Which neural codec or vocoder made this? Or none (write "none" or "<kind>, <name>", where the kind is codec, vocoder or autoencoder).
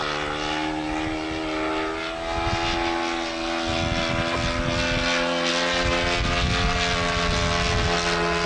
none